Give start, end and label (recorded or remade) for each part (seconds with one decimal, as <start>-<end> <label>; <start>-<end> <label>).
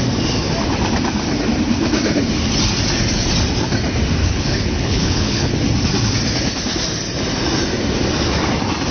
0.0-4.2 recorded; 4.2-5.5 remade; 5.5-8.9 recorded